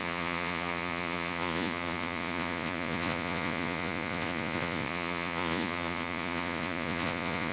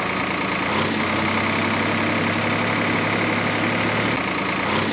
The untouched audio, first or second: second